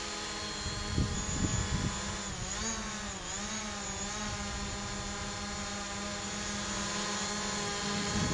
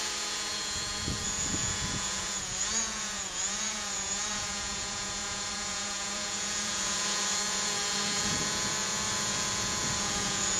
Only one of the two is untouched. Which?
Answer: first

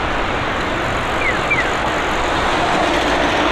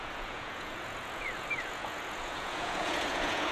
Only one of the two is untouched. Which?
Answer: first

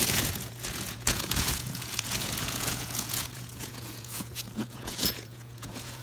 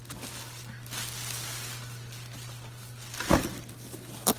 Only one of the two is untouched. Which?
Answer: second